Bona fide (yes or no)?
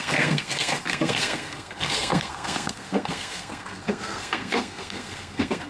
no